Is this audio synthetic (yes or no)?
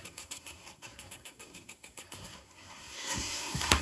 yes